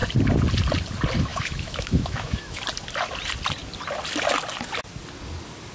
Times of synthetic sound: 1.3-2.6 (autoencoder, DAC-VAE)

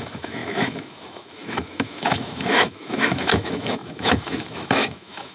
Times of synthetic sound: 0.0-5.3 (autoencoder, DAC-VAE)